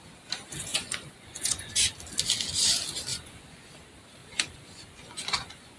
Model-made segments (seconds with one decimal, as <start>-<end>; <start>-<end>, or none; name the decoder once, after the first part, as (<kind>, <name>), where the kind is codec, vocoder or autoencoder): 0.7-1.7 (vocoder, Vocos); 3.1-3.7; 4.2-5.8